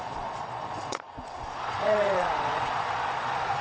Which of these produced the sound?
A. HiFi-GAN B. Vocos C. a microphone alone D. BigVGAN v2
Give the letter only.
B